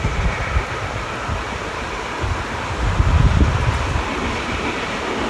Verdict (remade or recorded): recorded